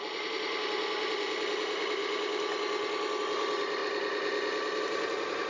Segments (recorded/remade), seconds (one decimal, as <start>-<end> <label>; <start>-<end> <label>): 0.0-2.0 remade; 2.0-3.2 recorded; 3.2-3.8 remade; 3.8-4.8 recorded; 4.8-5.5 remade